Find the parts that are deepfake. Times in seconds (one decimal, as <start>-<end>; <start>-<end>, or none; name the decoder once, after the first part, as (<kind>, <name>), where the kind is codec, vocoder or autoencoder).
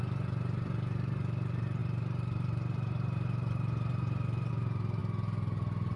0.0-5.0 (vocoder, BigVGAN v2)